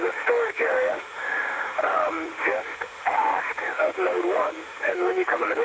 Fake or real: fake